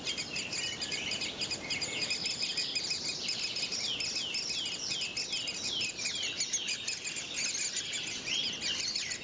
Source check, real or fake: real